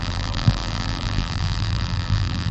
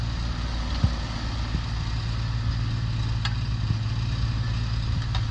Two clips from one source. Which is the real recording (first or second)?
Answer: second